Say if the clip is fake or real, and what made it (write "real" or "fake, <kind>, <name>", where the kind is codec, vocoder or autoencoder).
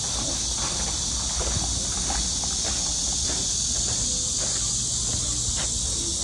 real